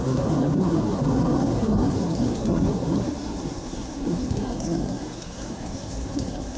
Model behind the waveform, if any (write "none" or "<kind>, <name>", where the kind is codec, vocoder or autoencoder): codec, SNAC